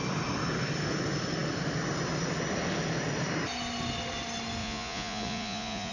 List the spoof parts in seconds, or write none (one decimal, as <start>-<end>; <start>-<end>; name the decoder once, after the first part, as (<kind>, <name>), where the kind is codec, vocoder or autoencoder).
4.6-5.9 (vocoder, Vocos)

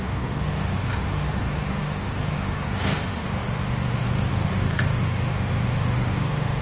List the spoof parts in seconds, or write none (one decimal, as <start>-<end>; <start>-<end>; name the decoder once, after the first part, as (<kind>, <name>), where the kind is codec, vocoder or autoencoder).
0.0-6.6 (autoencoder, DAC-VAE)